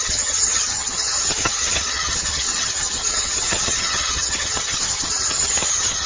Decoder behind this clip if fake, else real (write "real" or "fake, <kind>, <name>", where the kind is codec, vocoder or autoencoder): fake, vocoder, HiFi-GAN